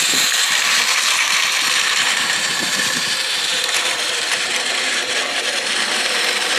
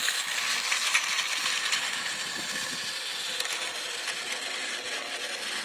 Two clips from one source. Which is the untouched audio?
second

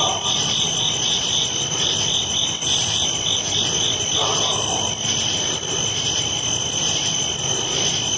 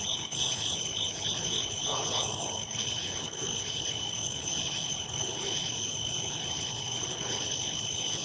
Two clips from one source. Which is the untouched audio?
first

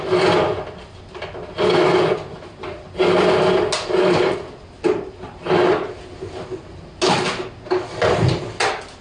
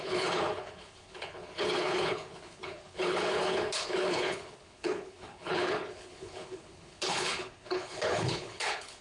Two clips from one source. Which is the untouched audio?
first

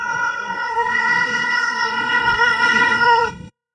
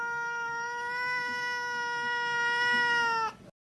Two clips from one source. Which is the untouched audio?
second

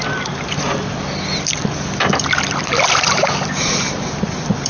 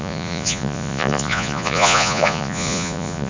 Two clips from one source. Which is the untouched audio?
first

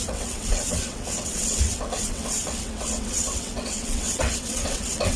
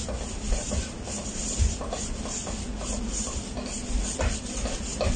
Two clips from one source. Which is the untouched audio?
second